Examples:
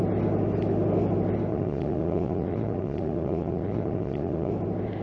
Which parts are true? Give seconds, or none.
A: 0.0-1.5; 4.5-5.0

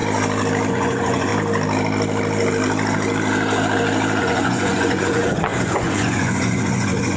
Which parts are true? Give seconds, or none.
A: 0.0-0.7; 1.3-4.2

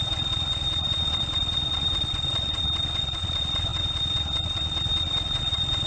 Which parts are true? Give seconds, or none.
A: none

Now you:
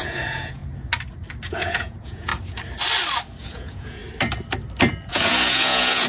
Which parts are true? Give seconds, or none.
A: 0.6-1.5; 2.3-3.4; 4.0-5.1